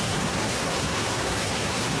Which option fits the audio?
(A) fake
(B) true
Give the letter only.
A